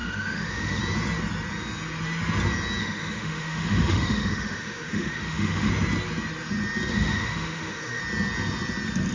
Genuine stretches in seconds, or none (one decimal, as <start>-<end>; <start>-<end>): 0.8-2.8; 5.7-6.9; 8.0-9.1